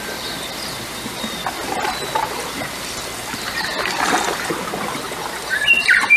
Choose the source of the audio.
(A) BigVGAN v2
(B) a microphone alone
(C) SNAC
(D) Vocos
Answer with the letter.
B